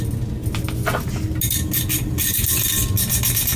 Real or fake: real